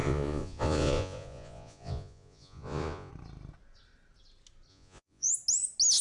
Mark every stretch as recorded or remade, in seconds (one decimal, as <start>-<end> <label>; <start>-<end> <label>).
0.0-3.1 remade; 3.1-4.7 recorded; 4.7-5.3 remade; 5.3-6.0 recorded

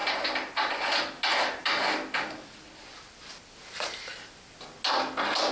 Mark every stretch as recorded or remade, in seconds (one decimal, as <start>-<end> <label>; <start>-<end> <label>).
0.0-5.5 recorded

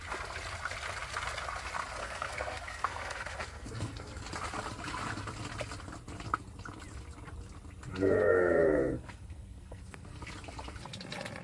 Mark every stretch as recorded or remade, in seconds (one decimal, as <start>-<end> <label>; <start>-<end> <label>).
0.0-2.0 recorded; 2.0-4.2 remade; 4.2-7.9 recorded; 7.9-10.2 remade; 10.2-11.4 recorded